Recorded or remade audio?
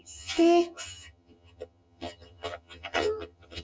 remade